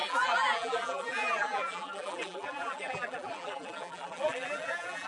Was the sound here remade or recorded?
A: remade